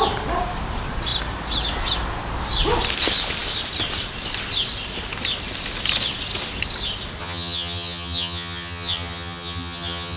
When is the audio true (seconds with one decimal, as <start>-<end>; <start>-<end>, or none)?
0.0-7.2